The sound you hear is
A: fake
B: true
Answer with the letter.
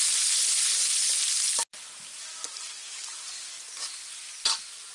B